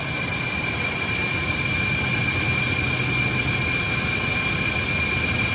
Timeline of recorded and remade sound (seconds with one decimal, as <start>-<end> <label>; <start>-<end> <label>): 0.0-5.5 recorded